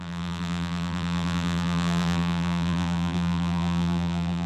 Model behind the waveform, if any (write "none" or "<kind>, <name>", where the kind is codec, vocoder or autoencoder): vocoder, BigVGAN v2